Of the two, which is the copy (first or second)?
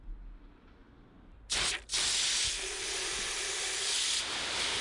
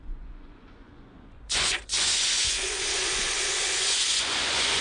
second